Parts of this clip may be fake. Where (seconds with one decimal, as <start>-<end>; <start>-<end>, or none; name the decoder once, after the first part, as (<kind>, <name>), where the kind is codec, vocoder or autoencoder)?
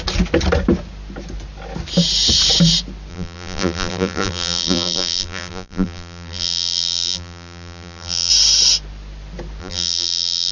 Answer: 3.1-8.3 (vocoder, BigVGAN v2); 9.6-10.5